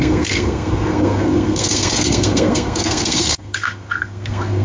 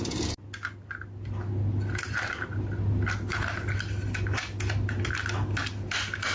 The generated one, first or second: first